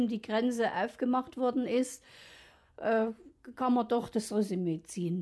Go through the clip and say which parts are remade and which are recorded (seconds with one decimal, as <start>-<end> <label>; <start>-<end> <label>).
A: 0.0-1.8 recorded; 1.8-3.6 remade; 3.6-5.2 recorded